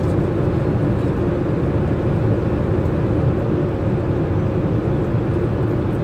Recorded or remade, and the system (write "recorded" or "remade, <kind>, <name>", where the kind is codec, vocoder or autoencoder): recorded